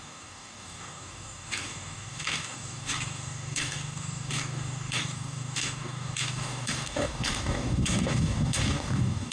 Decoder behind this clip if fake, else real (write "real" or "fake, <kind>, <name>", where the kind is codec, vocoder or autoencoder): fake, codec, DAC